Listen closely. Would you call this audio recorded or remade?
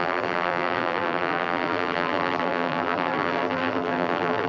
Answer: remade